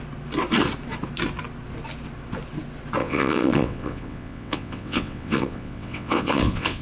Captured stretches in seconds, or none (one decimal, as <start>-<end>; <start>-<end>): 0.0-3.0